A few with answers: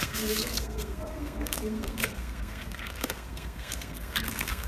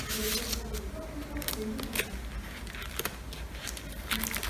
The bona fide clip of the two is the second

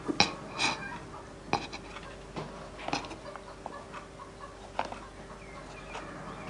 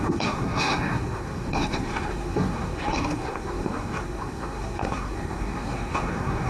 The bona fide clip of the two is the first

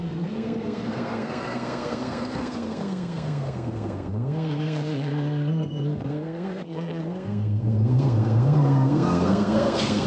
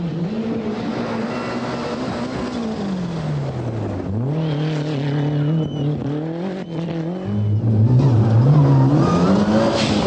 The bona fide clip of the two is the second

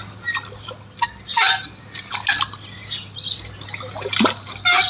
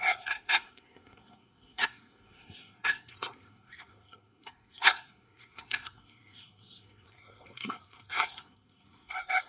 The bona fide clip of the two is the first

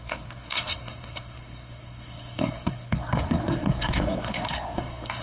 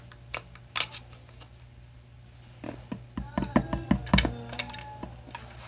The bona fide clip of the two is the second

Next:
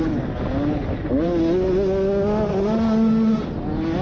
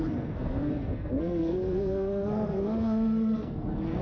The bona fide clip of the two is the first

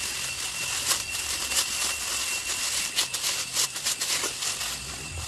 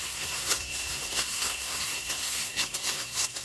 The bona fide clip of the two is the first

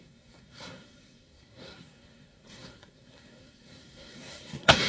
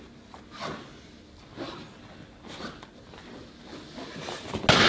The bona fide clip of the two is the second